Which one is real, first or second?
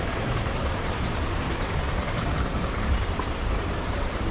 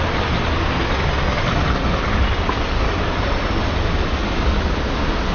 second